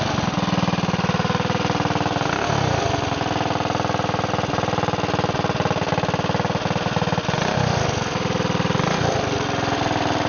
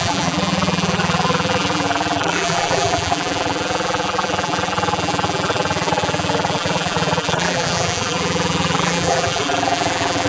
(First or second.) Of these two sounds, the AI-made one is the second